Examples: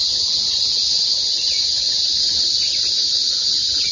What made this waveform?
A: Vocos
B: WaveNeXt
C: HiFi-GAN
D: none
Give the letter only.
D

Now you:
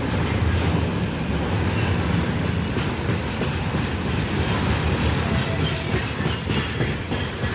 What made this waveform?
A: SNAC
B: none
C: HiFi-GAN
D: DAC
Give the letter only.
B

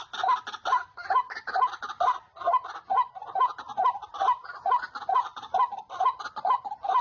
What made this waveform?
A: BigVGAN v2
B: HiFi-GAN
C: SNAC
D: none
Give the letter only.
D